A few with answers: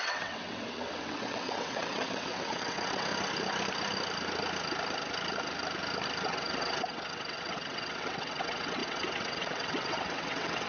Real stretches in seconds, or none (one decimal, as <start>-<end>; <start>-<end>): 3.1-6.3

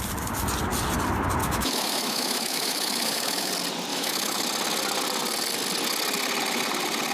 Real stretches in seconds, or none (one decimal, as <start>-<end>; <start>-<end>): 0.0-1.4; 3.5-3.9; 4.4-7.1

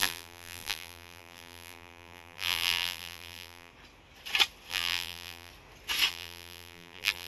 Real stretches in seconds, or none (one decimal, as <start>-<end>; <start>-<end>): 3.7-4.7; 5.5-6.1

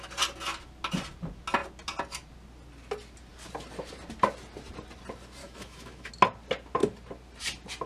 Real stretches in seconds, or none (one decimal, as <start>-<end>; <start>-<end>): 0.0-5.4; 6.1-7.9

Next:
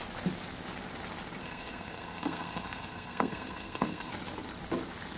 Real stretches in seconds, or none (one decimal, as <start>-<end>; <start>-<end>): 0.0-1.4; 4.1-5.2

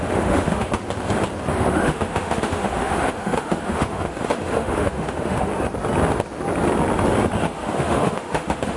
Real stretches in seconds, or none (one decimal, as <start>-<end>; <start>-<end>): 0.7-1.5; 5.5-7.4

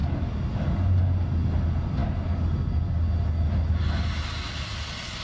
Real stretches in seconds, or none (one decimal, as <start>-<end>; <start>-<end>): 0.0-5.2

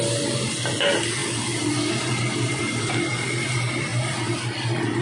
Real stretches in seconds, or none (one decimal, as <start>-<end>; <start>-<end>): 0.0-5.0